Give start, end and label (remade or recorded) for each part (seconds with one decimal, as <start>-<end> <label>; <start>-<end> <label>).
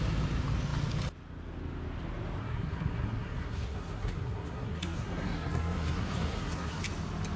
0.0-2.4 recorded; 2.4-6.8 remade; 6.8-7.4 recorded